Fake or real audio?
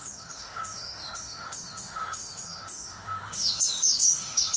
fake